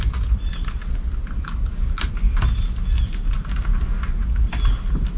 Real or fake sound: real